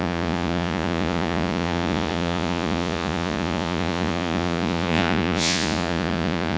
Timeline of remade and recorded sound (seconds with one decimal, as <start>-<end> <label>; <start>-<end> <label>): 0.0-6.6 remade